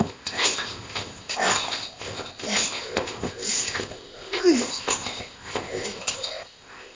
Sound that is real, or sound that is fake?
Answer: fake